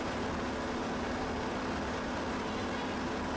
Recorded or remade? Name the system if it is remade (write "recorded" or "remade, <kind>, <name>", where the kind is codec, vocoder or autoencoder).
recorded